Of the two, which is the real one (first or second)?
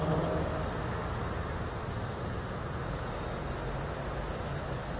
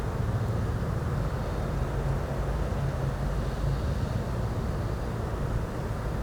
second